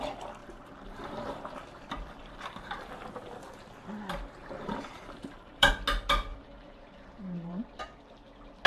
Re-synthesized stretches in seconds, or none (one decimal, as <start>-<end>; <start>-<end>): 0.4-2.9; 4.4-5.7; 6.3-7.6